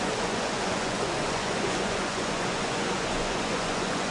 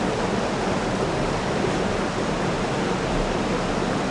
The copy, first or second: first